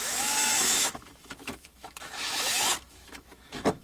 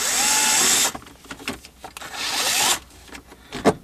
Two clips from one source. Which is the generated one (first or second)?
first